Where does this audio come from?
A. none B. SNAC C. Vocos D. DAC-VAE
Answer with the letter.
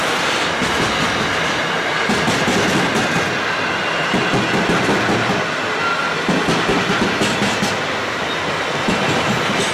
A